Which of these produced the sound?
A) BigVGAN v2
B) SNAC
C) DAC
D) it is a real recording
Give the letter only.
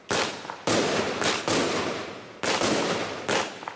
A